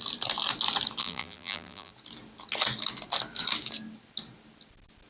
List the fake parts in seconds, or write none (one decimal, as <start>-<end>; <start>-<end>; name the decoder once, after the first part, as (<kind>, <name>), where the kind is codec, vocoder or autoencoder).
1.0-1.9 (vocoder, BigVGAN v2)